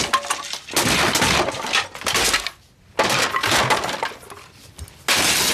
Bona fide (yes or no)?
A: yes